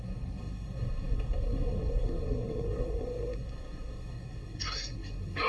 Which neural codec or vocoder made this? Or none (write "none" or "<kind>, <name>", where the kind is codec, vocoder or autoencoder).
codec, SNAC